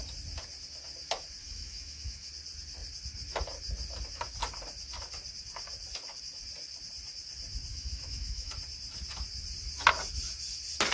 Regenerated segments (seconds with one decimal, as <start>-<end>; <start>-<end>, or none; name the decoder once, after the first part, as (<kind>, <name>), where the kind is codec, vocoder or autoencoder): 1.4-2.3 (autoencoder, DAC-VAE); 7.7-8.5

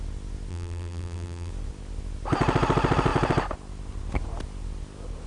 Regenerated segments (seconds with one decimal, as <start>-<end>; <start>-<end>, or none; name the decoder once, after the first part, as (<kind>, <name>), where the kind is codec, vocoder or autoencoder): 0.5-1.5 (vocoder, BigVGAN v2)

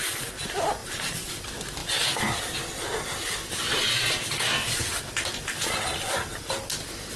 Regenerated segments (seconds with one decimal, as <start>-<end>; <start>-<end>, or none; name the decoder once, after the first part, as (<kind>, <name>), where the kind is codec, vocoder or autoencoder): 0.8-1.3 (vocoder, BigVGAN v2)

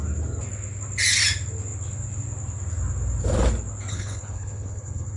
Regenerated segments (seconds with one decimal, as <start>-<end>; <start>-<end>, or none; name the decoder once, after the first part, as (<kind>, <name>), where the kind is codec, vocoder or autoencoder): 3.9-5.2 (codec, HILCodec)

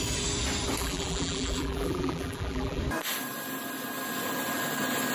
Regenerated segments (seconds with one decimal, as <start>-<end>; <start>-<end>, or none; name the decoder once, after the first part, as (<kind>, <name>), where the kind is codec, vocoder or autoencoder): 0.8-2.8 (vocoder, BigVGAN v2)